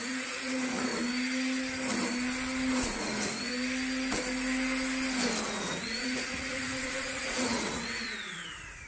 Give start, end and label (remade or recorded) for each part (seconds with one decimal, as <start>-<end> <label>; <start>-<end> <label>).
0.0-0.9 remade; 0.9-2.7 recorded; 2.7-3.5 remade; 3.5-5.5 recorded; 5.5-8.9 remade